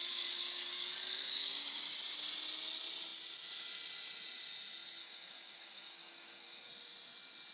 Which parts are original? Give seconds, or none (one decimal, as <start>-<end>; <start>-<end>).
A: 1.8-5.0; 6.7-7.5